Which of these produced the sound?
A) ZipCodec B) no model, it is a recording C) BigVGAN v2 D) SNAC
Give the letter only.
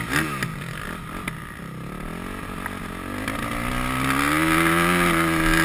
B